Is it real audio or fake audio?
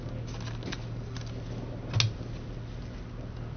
real